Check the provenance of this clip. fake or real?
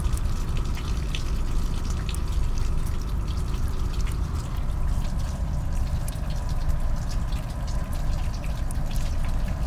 real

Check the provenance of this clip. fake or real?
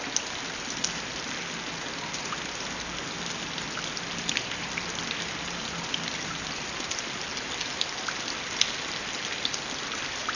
real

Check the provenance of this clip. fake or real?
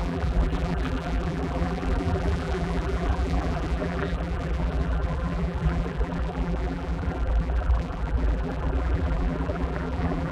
fake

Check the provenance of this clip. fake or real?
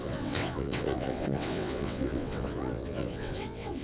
fake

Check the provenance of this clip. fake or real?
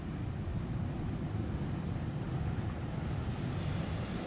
real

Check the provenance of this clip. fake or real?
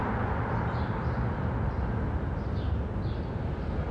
real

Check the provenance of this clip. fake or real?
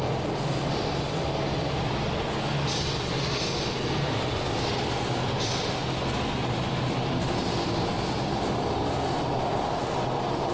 real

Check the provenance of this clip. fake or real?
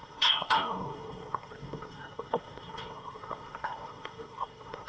fake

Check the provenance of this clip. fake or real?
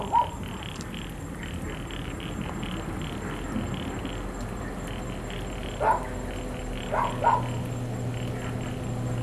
real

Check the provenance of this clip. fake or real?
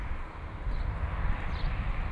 real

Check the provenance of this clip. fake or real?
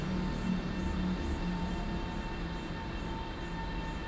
real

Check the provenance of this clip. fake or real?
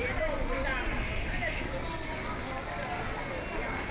real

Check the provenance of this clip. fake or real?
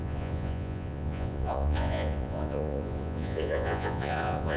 fake